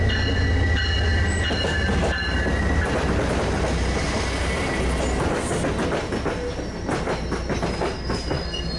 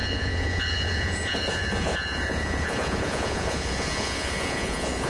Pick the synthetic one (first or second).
second